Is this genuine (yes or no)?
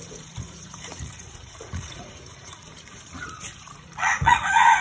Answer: no